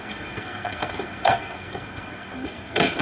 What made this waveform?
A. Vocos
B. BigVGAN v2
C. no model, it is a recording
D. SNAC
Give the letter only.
D